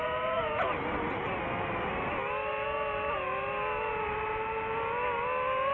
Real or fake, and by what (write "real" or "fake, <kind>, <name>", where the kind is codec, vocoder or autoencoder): real